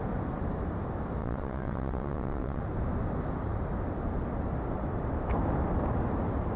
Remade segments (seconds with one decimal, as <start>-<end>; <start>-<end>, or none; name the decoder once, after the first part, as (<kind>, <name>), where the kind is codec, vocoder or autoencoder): 1.2-2.6 (vocoder, WaveNeXt)